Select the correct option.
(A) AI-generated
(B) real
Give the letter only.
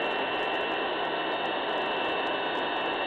B